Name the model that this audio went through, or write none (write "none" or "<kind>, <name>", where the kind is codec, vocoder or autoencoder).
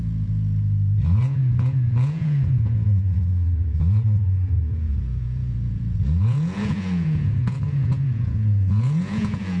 vocoder, Vocos